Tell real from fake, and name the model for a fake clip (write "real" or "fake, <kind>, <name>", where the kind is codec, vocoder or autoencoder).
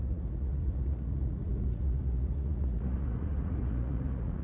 fake, vocoder, Vocos